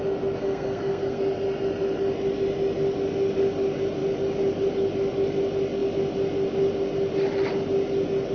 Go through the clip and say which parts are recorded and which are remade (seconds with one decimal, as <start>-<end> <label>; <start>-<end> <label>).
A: 0.0-0.4 recorded; 0.4-1.2 remade; 1.2-8.3 recorded